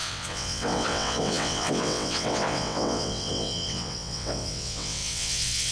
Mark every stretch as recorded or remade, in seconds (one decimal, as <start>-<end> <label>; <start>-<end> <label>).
0.0-5.7 remade